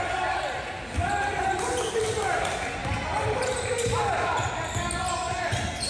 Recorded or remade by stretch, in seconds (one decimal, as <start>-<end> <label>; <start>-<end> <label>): 0.0-2.8 recorded; 2.8-4.7 remade; 4.7-5.9 recorded